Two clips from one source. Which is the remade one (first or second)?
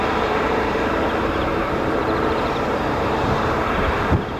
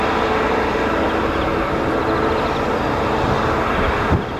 first